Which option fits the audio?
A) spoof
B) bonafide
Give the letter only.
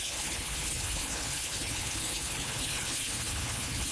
A